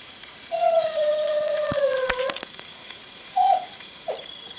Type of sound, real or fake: fake